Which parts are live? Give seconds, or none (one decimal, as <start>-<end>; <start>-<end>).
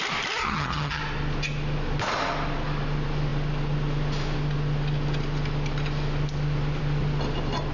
0.0-0.4; 1.0-7.7